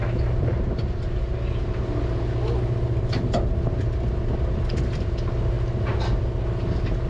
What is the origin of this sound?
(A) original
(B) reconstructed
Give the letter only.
A